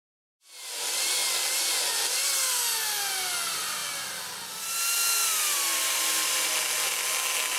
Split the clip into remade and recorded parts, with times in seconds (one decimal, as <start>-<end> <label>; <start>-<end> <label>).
0.0-7.6 recorded